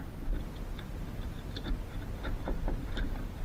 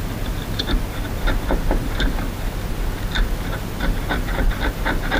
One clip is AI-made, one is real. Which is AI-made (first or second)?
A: first